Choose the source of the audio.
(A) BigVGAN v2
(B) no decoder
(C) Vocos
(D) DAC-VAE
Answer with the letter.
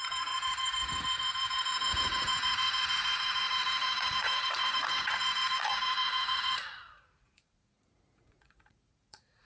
C